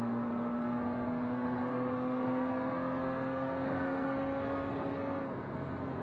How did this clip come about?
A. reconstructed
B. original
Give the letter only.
A